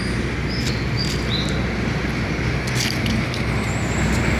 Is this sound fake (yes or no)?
no